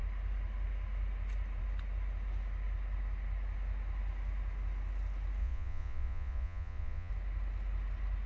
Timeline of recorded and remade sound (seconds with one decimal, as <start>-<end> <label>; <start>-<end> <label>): 0.0-5.4 recorded; 5.4-7.1 remade; 7.1-8.3 recorded